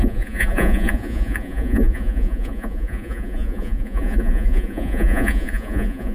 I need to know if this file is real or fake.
fake